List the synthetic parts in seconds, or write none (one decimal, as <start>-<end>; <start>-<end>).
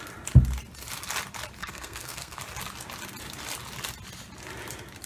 1.6-2.4